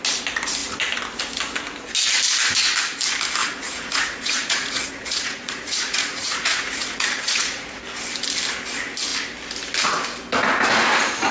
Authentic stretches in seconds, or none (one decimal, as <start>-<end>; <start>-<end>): 0.0-3.4; 7.8-11.3